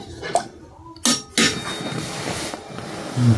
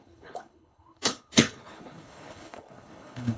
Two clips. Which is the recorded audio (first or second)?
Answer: first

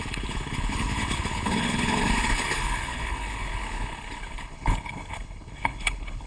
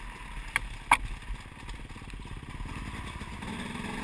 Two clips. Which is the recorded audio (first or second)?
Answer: second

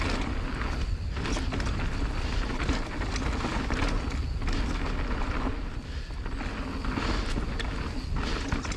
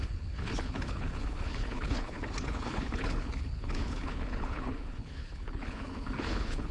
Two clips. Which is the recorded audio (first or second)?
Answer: first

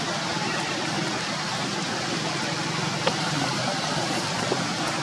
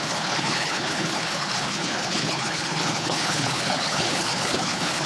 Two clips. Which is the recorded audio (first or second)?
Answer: first